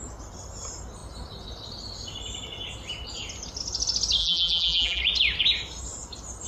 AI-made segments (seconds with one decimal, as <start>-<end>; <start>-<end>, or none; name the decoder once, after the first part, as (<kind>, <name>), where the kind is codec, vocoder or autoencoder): 4.2-5.0 (vocoder, BigVGAN v2)